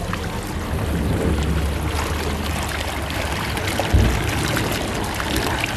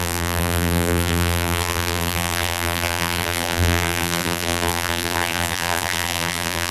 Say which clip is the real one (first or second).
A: first